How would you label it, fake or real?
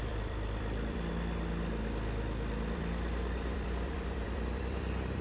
fake